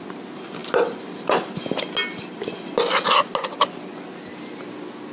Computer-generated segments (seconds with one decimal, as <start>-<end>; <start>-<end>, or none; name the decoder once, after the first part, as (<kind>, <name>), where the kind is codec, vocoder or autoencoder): none